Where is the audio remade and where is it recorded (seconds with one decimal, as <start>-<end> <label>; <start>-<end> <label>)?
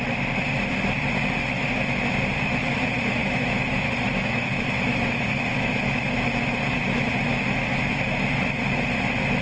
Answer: 0.0-3.2 recorded; 3.2-6.3 remade; 6.3-9.4 recorded